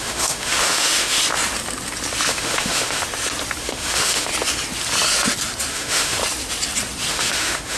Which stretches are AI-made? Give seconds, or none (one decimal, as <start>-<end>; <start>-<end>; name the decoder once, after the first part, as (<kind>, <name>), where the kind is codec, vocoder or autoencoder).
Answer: 0.0-1.2 (autoencoder, DAC-VAE); 2.3-3.0; 3.6-4.3; 5.7-6.2; 7.1-7.8